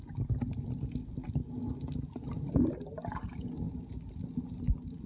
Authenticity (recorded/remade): recorded